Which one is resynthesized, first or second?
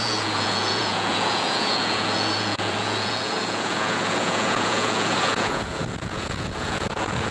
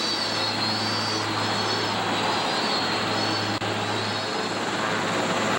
first